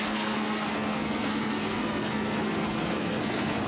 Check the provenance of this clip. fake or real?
fake